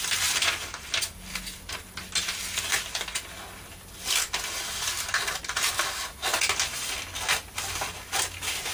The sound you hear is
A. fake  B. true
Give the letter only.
B